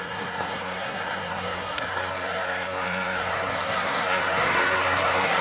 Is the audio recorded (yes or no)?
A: no